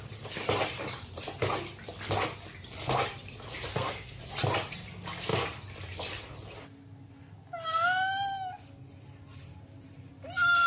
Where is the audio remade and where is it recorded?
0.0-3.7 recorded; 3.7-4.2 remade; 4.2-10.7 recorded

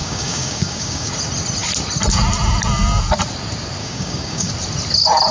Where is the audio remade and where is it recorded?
0.0-1.1 remade; 1.1-3.8 recorded; 3.8-4.5 remade; 4.5-5.3 recorded